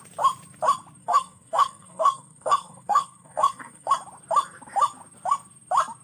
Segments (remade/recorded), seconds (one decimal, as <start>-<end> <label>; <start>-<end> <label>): 0.0-1.0 recorded; 1.0-3.9 remade; 3.9-6.0 recorded